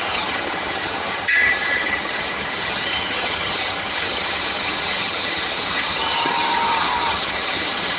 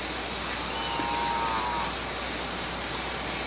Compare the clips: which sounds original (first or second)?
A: second